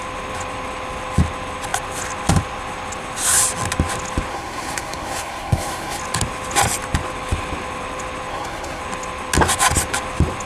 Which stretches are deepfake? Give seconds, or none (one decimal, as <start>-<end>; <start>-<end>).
4.3-6.0; 8.3-8.8